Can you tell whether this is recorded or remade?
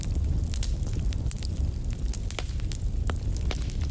recorded